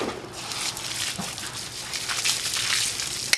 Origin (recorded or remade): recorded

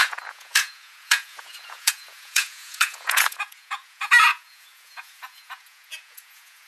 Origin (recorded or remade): remade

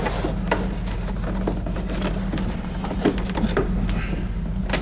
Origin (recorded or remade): recorded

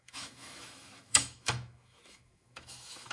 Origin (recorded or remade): remade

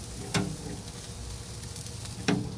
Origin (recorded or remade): recorded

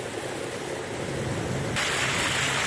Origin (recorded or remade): recorded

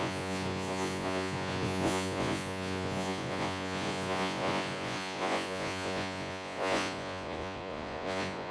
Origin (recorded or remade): remade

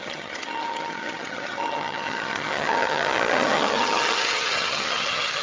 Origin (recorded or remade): remade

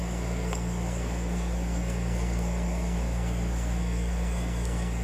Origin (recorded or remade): remade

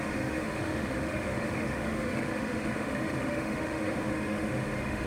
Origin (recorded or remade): remade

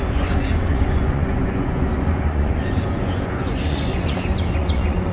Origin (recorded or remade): remade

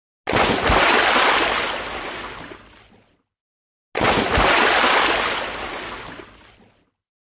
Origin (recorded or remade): recorded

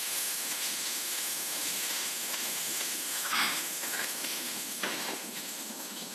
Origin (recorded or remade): remade